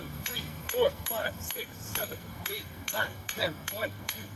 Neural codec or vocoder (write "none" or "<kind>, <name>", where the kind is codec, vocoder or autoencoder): codec, SNAC